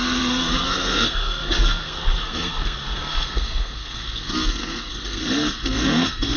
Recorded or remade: remade